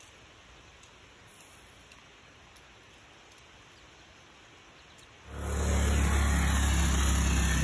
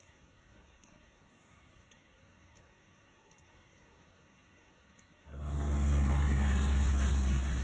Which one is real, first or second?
first